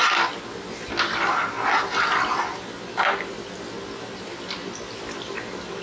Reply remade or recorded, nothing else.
recorded